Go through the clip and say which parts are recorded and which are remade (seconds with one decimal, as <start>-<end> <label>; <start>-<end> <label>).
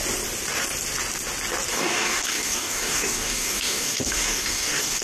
0.0-1.7 recorded; 1.7-5.0 remade